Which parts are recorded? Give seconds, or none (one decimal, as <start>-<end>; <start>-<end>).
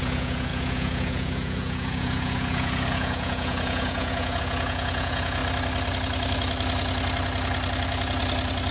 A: 5.4-8.7